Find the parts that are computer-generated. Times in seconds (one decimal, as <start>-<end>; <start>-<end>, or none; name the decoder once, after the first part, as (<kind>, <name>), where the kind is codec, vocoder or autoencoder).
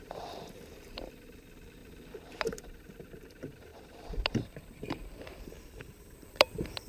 0.0-1.8 (vocoder, BigVGAN v2); 2.3-6.9